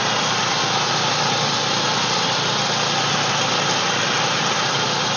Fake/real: real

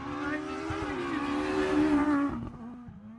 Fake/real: real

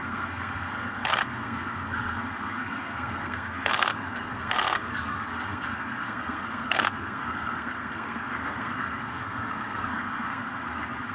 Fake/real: fake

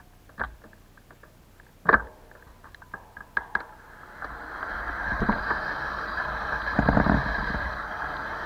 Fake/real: real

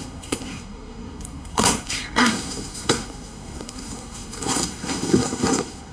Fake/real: fake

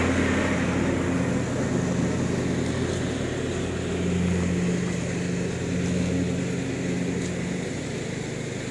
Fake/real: real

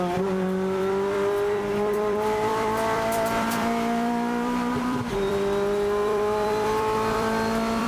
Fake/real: fake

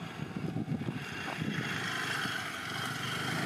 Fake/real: real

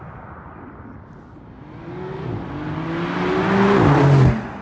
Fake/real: real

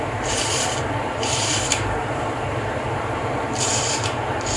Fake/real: fake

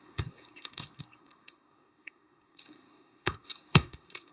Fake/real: fake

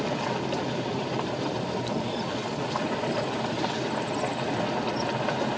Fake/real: real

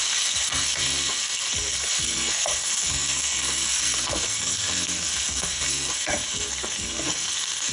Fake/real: fake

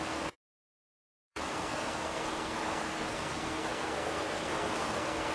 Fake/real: fake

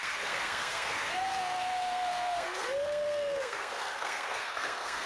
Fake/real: fake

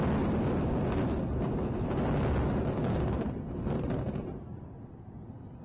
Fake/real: real